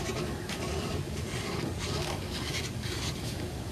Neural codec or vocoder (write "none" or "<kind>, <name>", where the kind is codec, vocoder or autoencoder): codec, DAC